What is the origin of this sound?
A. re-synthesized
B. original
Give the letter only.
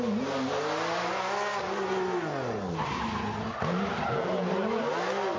B